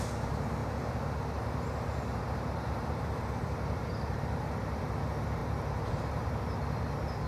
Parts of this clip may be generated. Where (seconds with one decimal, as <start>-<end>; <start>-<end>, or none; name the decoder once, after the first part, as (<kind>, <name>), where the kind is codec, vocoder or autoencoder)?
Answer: 0.6-5.0 (vocoder, BigVGAN v2); 5.4-6.4